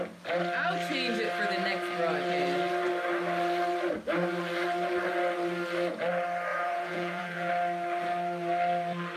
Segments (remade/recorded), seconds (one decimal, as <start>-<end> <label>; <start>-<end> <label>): 0.0-6.5 recorded; 6.5-7.5 remade; 7.5-9.2 recorded